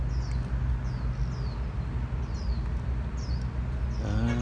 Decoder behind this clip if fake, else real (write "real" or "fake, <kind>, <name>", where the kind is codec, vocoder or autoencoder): real